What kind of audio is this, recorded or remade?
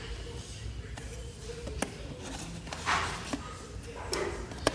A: recorded